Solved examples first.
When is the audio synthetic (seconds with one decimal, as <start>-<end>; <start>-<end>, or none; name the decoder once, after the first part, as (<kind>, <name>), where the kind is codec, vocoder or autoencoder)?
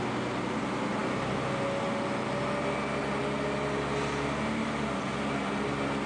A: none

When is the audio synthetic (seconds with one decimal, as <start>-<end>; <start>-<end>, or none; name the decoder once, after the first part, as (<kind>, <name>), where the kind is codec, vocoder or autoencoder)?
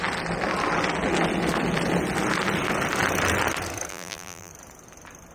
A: 3.9-4.5 (vocoder, BigVGAN v2)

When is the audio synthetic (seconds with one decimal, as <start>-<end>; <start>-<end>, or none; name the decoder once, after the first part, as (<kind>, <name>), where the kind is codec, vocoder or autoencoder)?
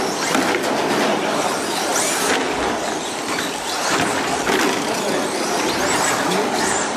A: 1.9-6.1 (vocoder, BigVGAN v2)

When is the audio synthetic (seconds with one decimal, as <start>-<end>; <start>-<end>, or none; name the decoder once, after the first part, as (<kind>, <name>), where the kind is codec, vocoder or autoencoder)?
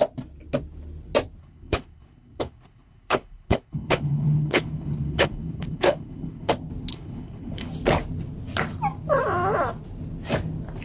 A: 1.4-6.5 (codec, HILCodec); 6.9-7.7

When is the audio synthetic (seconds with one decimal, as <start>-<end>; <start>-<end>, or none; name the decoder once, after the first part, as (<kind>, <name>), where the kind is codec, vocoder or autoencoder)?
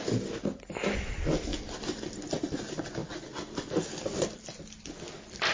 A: none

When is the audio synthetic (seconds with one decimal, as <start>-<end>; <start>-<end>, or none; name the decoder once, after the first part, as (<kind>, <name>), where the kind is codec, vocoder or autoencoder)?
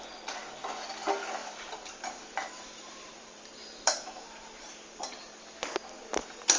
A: 1.4-5.4 (vocoder, BigVGAN v2)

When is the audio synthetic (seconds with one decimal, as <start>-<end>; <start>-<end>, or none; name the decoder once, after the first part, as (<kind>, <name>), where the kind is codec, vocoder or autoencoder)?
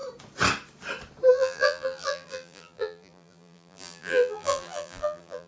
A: 1.3-5.5 (vocoder, BigVGAN v2)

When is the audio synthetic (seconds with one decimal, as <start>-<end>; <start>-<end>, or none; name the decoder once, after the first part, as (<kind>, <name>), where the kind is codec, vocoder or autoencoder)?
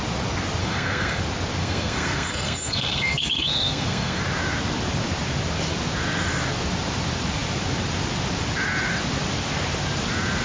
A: 0.6-1.2 (codec, SNAC); 1.6-4.2